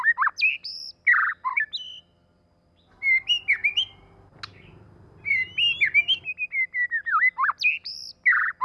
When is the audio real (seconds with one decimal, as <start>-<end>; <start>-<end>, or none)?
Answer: 0.0-8.6